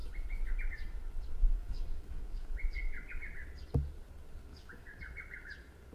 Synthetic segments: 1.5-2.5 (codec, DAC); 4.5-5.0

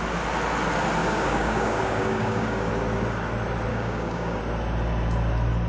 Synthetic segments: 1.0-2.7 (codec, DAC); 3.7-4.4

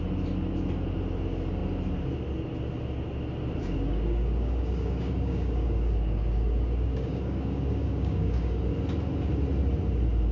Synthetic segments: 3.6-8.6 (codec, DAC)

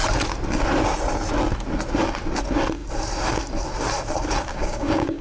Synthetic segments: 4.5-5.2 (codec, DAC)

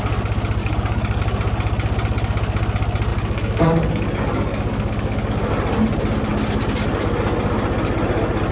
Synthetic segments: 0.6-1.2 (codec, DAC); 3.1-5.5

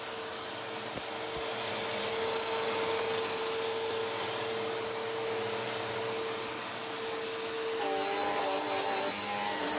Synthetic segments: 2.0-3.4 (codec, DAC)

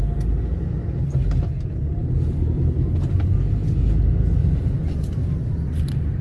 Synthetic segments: none